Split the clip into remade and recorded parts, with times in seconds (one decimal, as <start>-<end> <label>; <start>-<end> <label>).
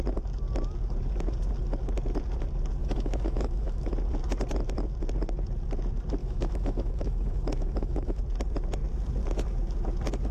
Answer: 0.0-2.8 recorded; 2.8-3.9 remade; 3.9-6.2 recorded; 6.2-8.2 remade; 8.2-10.3 recorded